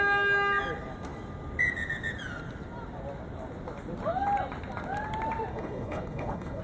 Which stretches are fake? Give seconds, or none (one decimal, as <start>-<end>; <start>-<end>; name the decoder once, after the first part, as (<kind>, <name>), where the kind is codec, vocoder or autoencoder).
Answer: 5.5-6.6 (codec, HILCodec)